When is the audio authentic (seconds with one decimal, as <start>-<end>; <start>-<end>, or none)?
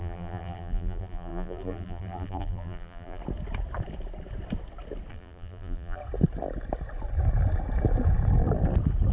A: 3.2-5.1; 6.0-9.1